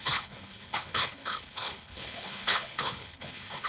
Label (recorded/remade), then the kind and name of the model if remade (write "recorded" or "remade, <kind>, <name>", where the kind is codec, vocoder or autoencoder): remade, codec, HILCodec